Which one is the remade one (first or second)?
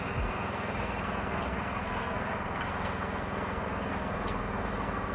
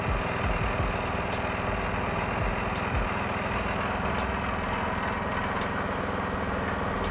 first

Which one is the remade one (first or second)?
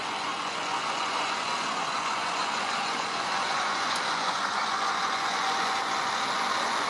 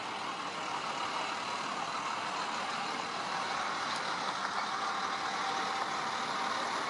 first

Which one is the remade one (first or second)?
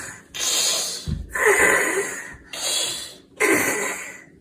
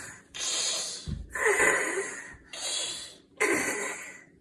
second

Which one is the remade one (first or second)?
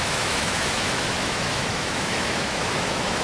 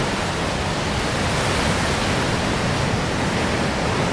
first